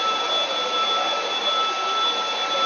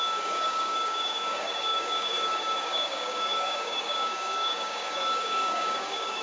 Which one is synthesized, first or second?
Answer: second